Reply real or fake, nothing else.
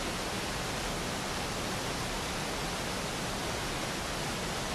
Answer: real